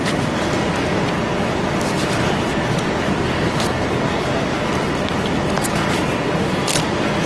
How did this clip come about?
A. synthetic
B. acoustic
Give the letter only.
B